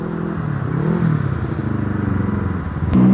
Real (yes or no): yes